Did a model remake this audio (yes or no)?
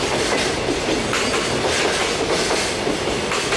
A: no